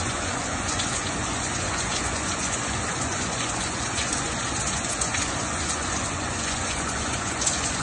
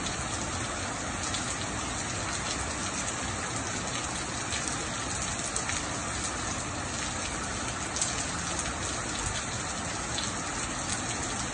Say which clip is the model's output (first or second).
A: first